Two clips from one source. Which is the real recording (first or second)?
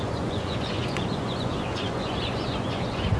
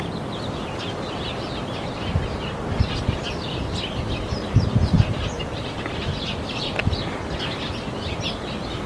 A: second